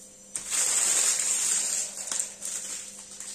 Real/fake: real